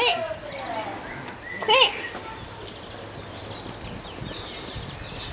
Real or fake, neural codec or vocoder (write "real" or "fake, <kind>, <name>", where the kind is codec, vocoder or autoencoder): real